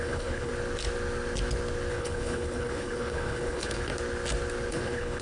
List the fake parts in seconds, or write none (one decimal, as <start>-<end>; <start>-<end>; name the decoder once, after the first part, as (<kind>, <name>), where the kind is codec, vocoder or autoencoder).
0.0-0.5 (codec, HILCodec); 1.9-3.9; 4.7-5.2